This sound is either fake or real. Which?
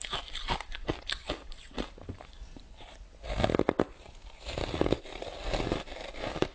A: real